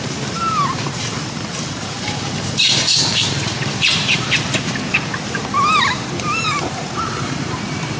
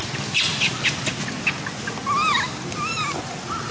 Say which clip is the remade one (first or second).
first